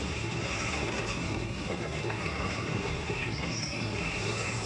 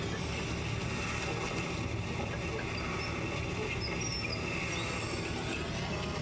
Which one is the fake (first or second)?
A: first